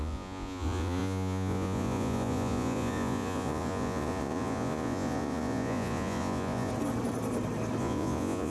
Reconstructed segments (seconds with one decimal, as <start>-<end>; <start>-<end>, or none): 0.0-6.7; 7.8-8.5